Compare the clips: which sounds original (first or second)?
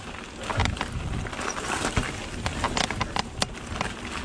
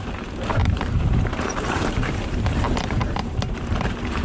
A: first